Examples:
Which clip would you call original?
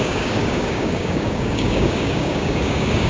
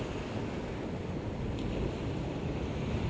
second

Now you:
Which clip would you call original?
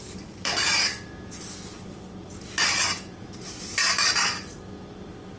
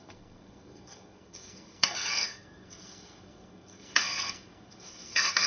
first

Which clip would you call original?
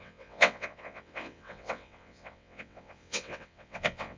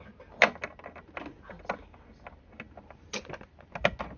second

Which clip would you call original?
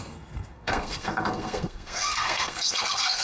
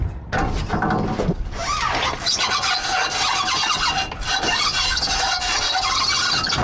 second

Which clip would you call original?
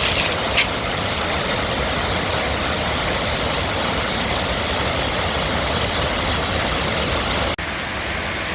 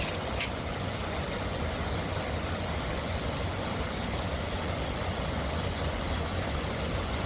first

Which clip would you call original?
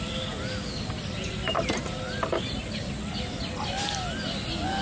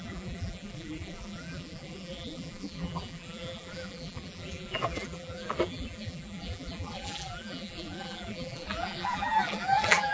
first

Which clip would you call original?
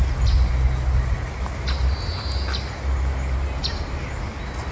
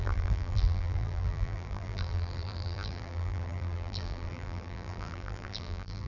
first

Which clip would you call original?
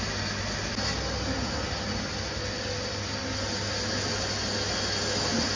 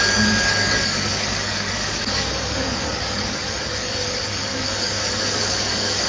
first